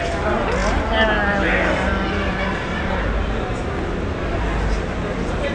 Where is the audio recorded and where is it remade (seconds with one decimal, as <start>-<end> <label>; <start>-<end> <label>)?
0.0-5.5 recorded

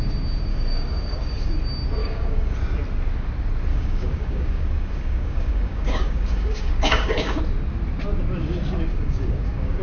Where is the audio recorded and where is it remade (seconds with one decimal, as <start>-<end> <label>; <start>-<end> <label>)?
0.0-0.5 recorded; 0.5-1.5 remade; 1.5-2.0 recorded; 2.0-2.5 remade; 2.5-3.7 recorded; 3.7-7.4 remade; 7.4-8.9 recorded; 8.9-9.8 remade

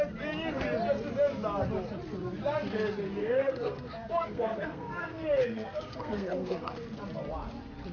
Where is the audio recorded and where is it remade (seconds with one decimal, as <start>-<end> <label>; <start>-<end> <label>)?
0.0-3.2 recorded; 3.2-7.0 remade; 7.0-7.9 recorded

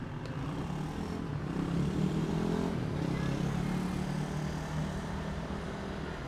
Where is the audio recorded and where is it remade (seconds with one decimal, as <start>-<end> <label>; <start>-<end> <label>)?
0.0-1.3 recorded; 1.3-2.3 remade; 2.3-4.8 recorded; 4.8-5.8 remade; 5.8-6.3 recorded

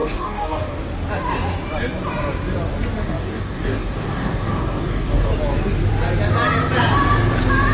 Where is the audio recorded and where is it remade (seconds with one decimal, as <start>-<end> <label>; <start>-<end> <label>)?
0.0-0.8 remade; 0.8-3.0 recorded; 3.0-5.3 remade; 5.3-7.7 recorded